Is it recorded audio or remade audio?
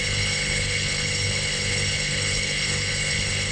remade